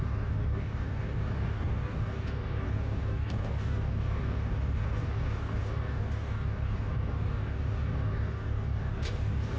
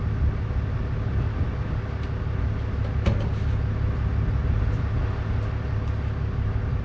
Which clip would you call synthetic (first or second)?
first